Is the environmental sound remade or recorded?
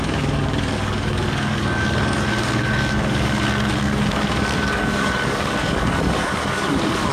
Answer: remade